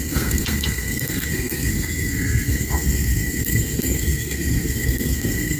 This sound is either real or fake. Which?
fake